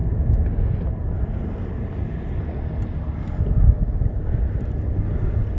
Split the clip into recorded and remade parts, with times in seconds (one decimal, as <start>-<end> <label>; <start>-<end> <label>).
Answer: 0.0-5.6 recorded